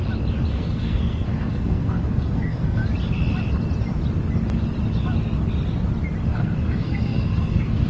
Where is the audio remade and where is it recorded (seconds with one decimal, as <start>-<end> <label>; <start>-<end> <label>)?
0.0-0.5 recorded; 0.5-2.8 remade; 2.8-6.3 recorded; 6.3-7.9 remade